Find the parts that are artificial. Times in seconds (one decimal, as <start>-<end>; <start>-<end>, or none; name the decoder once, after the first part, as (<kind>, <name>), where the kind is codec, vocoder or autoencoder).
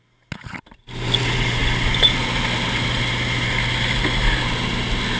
none